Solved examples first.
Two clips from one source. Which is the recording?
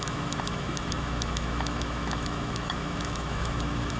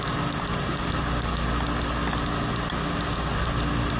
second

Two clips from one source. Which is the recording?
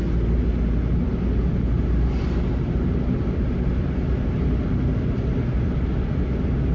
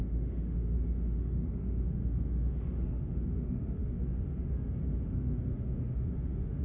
first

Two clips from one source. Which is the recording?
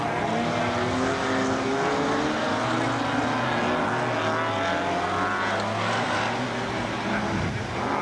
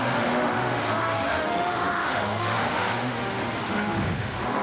first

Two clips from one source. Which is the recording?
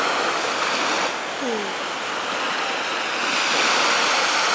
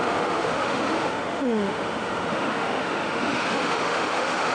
first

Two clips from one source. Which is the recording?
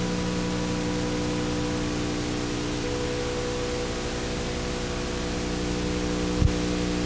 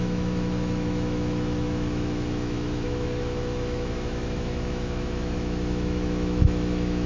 first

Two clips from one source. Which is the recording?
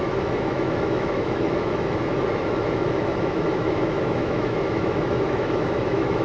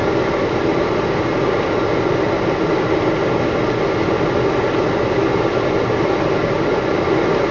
second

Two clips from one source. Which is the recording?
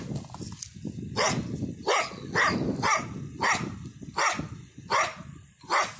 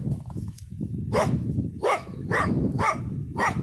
first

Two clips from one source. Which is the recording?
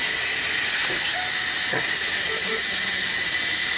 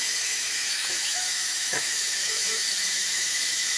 first